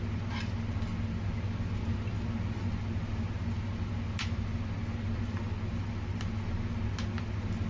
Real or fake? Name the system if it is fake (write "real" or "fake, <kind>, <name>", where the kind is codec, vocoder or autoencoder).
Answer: real